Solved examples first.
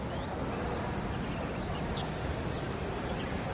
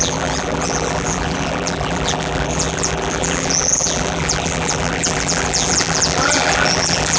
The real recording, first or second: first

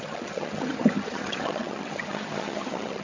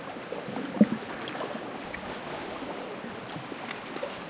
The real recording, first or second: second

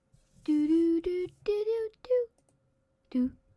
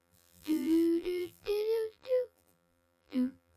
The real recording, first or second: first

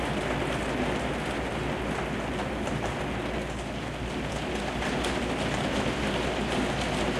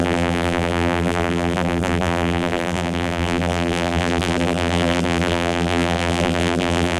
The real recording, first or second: first